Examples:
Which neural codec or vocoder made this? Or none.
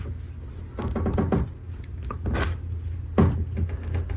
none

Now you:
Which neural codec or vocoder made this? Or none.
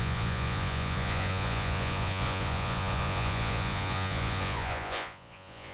vocoder, Vocos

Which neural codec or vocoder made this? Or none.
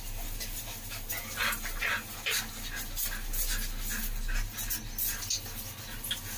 none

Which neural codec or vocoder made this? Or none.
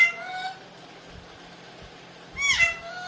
none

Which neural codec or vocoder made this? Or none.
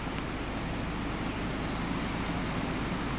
none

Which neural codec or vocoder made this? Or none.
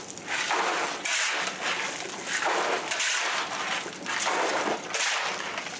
none